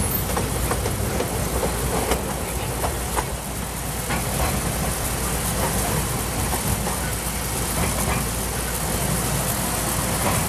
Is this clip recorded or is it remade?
recorded